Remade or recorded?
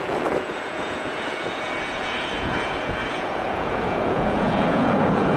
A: remade